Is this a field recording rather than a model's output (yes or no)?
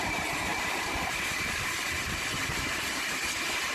yes